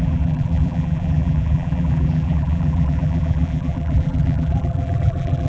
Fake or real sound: fake